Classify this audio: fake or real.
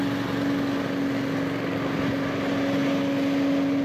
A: real